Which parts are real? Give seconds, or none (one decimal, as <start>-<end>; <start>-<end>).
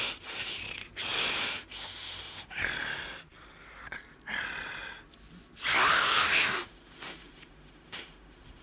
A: 0.6-1.4; 2.6-5.9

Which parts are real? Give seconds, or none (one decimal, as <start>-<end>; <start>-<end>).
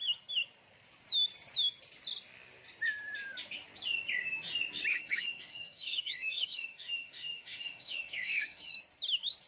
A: 0.0-4.9; 8.8-9.5